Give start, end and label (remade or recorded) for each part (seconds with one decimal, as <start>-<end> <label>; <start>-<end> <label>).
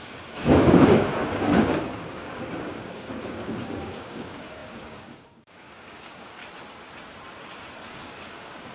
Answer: 0.0-6.4 remade; 6.4-7.9 recorded; 7.9-8.7 remade